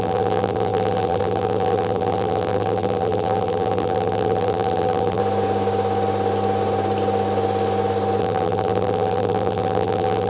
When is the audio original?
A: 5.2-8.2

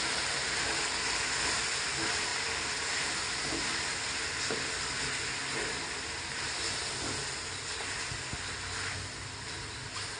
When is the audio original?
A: 0.0-10.2

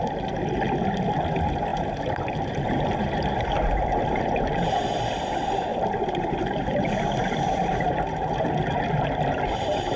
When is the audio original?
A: 0.0-1.7; 5.0-5.7

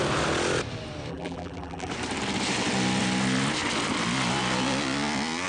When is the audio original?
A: 0.0-1.1; 1.9-5.5

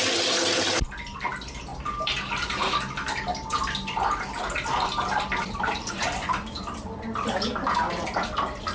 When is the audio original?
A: 0.0-1.7; 5.9-8.7